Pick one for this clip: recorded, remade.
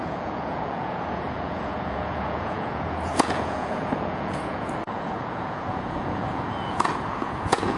remade